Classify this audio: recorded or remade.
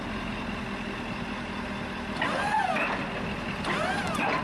recorded